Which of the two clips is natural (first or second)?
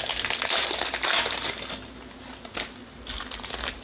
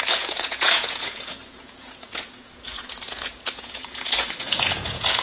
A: first